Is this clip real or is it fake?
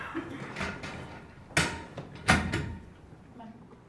real